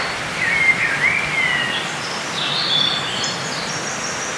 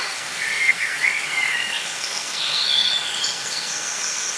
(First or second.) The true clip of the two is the first